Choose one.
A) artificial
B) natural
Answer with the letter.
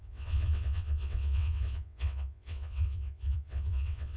A